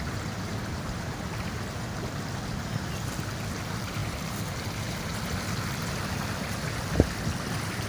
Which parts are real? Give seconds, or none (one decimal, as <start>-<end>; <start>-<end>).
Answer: 0.0-7.9